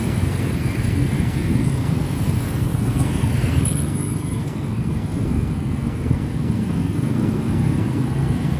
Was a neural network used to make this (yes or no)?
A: yes